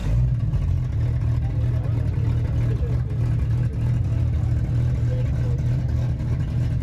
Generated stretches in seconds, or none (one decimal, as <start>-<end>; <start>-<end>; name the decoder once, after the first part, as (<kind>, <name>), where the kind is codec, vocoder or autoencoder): none